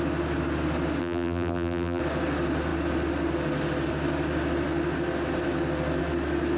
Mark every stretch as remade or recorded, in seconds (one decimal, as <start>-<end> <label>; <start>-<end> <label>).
0.0-1.0 recorded; 1.0-2.0 remade; 2.0-6.6 recorded